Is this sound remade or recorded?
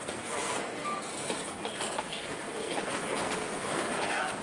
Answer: remade